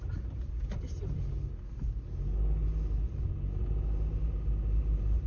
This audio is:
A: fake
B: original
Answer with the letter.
B